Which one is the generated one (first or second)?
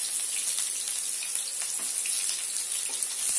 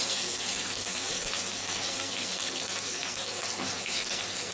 second